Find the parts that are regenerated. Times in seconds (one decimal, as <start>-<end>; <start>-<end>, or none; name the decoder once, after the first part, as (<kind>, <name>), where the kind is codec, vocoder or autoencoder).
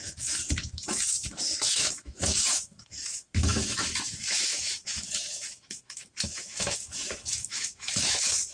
0.0-8.5 (autoencoder, DAC-VAE)